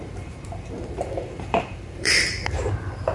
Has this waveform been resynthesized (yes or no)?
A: yes